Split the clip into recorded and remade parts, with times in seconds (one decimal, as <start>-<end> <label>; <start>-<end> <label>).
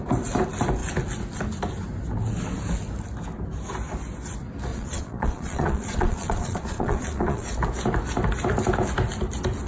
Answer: 0.0-4.7 recorded; 4.7-7.6 remade; 7.6-9.7 recorded